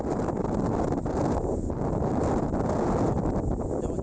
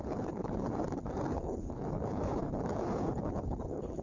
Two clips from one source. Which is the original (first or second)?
first